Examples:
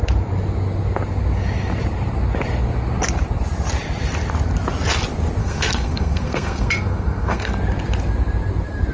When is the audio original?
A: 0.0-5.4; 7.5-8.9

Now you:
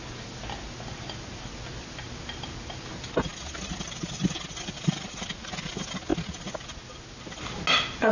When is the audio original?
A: 0.0-8.1

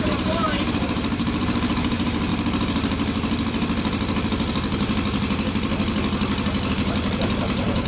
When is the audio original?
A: 2.3-6.7

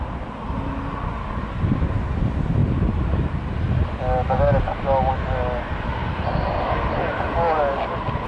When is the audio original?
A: 0.0-2.6; 5.1-6.0; 6.9-8.3

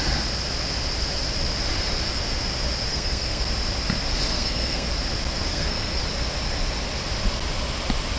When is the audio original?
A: 0.0-2.9; 3.4-4.3; 4.9-5.5; 6.0-8.2